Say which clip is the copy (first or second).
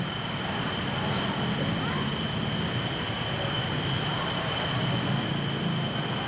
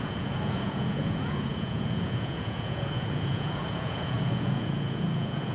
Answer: second